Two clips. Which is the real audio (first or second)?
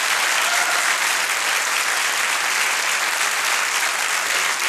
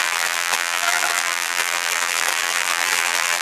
first